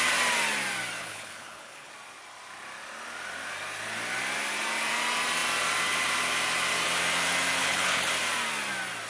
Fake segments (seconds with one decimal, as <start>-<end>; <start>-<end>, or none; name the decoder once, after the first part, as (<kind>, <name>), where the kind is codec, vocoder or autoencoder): 1.0-1.9 (codec, HILCodec); 7.6-8.1